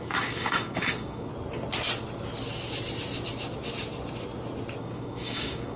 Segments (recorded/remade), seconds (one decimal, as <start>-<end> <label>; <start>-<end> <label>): 0.0-1.3 remade; 1.3-4.8 recorded; 4.8-5.8 remade